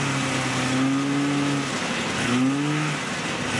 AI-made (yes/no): no